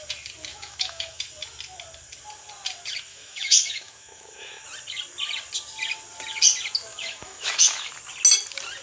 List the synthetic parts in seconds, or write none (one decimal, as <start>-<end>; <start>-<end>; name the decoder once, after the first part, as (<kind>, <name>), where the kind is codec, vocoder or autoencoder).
0.5-1.2 (autoencoder, DAC-VAE); 3.1-4.6; 6.9-7.9